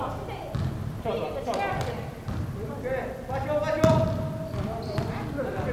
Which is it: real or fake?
real